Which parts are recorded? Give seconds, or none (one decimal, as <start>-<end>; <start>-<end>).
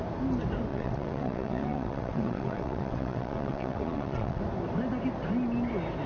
0.0-0.7; 4.4-6.1